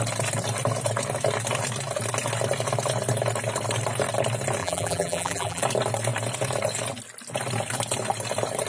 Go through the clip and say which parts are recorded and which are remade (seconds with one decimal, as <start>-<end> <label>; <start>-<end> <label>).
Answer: 0.0-4.6 recorded; 4.6-5.6 remade; 5.6-8.7 recorded